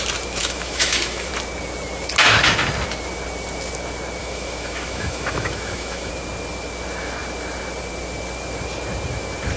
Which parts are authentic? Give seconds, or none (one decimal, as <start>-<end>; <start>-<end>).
0.0-0.4; 1.3-4.2; 6.1-9.6